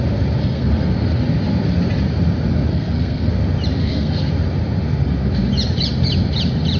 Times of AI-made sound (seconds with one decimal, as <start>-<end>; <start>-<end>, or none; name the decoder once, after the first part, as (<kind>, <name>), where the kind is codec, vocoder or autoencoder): 0.4-1.2 (codec, SNAC); 2.7-3.3; 3.8-4.3